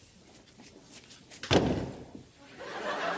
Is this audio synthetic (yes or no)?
no